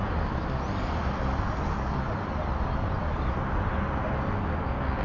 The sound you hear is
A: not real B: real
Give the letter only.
B